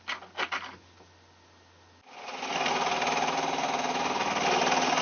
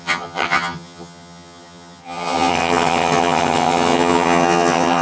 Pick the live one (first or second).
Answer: first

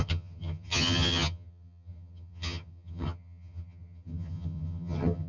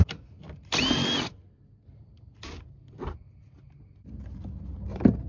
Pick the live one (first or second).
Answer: second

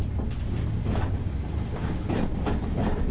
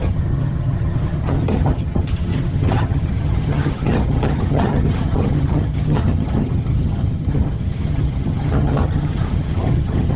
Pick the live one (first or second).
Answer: first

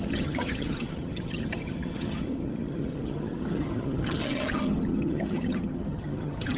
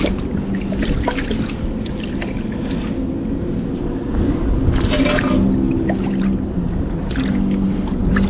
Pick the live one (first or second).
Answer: second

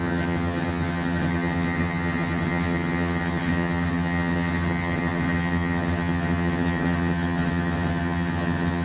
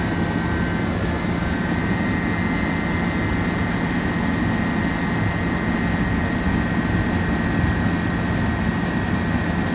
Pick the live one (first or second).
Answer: second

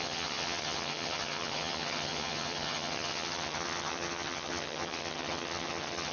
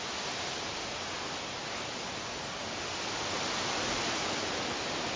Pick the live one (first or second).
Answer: second